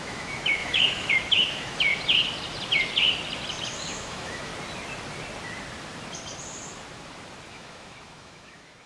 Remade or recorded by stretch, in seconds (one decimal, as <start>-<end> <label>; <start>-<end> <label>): 0.0-1.9 remade; 1.9-3.9 recorded; 3.9-4.5 remade; 4.5-7.5 recorded; 7.5-8.9 remade

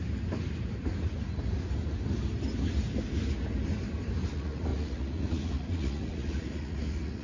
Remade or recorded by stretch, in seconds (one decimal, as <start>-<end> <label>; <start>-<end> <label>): 0.0-4.3 recorded; 4.3-7.2 remade

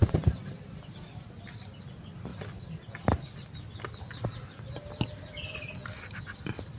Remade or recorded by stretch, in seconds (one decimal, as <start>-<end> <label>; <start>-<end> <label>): 0.0-6.8 recorded

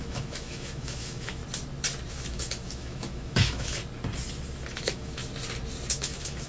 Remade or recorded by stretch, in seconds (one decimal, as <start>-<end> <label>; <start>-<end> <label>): 0.0-1.4 remade; 1.4-2.1 recorded; 2.1-3.8 remade; 3.8-4.7 recorded; 4.7-5.2 remade; 5.2-5.9 recorded; 5.9-6.5 remade

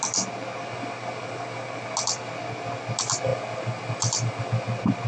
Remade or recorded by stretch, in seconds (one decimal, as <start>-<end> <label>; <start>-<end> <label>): 0.0-5.1 recorded

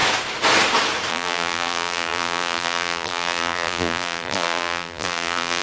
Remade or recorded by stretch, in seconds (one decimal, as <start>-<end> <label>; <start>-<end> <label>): 0.0-1.1 recorded; 1.1-5.6 remade

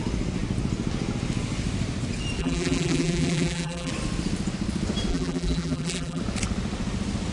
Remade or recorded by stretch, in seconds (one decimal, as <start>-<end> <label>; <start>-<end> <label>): 0.0-2.4 recorded; 2.4-3.9 remade; 3.9-5.1 recorded; 5.1-6.2 remade; 6.2-7.3 recorded

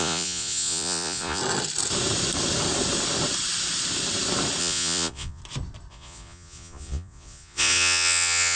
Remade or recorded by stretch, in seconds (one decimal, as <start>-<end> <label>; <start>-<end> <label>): 0.0-1.4 remade; 1.4-4.6 recorded; 4.6-5.4 remade; 5.4-5.9 recorded; 5.9-8.6 remade